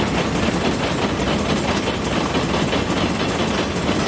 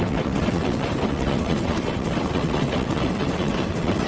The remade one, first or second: second